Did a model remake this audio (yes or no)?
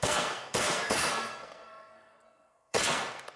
yes